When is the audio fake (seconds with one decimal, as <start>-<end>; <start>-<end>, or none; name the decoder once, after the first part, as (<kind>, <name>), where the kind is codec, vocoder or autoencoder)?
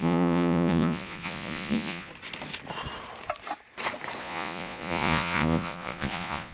0.0-2.1 (vocoder, Vocos); 4.2-6.5